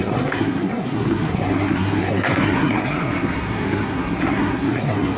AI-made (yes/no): yes